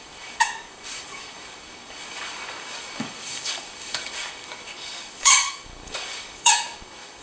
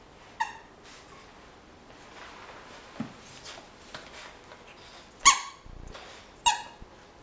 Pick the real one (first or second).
second